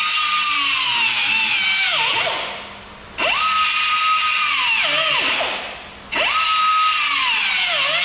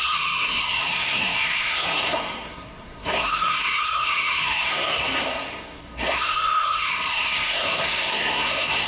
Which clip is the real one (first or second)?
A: first